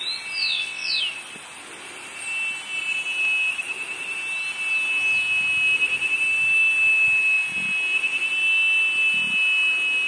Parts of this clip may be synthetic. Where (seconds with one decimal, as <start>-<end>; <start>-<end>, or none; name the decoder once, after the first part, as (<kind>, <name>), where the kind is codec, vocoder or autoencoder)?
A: 0.4-1.0 (vocoder, WaveNeXt)